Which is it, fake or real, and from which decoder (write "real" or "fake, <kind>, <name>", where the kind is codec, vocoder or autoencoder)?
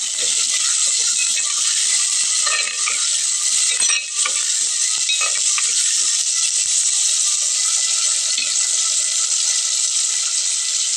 real